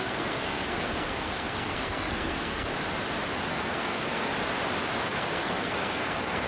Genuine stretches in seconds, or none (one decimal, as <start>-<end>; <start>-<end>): 2.7-3.5; 4.3-5.0